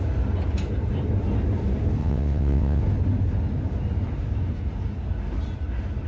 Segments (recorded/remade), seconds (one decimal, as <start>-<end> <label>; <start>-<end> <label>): 0.0-2.0 recorded; 2.0-2.8 remade; 2.8-6.1 recorded